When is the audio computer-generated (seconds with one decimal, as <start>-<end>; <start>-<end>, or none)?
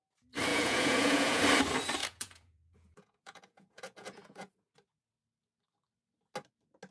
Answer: 0.5-1.4; 2.0-4.7